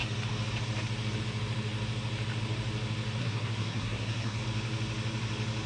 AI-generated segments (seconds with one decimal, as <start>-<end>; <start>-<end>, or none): 3.2-4.4

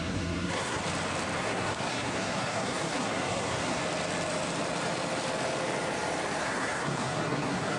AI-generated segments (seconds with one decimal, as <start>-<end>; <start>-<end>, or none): 0.0-0.8; 1.4-3.8; 6.4-7.8